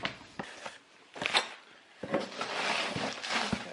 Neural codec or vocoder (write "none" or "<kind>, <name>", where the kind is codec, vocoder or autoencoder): none